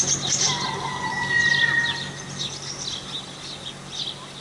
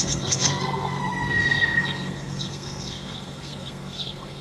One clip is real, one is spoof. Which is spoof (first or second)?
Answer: second